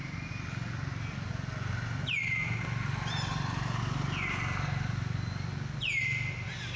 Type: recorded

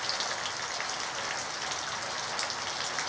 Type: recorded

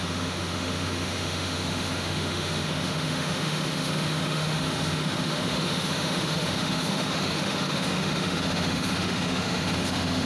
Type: remade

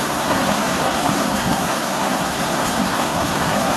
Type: remade